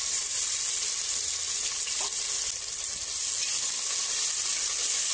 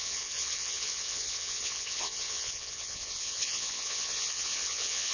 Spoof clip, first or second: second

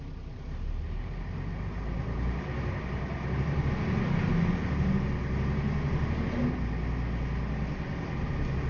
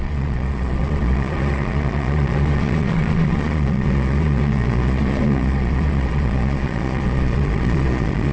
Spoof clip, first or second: second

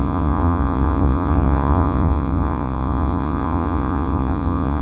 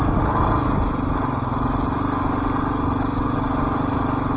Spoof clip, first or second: first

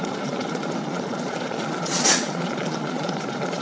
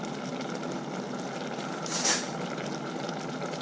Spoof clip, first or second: first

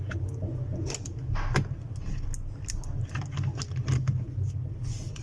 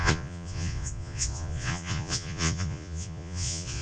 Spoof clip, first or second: second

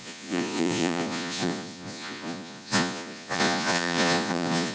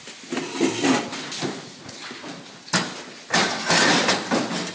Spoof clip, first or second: first